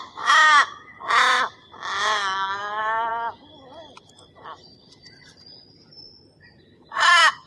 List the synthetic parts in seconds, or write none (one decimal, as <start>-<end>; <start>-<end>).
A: none